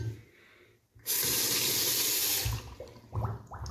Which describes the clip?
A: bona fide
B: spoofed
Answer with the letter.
A